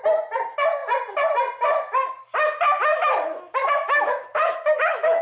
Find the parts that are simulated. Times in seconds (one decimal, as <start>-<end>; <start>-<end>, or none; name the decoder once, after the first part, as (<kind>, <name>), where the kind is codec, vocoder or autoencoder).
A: 2.8-5.2 (autoencoder, DAC-VAE)